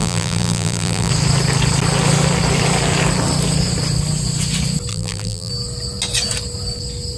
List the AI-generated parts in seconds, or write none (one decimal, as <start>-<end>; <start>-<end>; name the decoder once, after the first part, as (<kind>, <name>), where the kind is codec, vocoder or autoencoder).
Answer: 0.0-1.1 (vocoder, BigVGAN v2); 4.9-5.5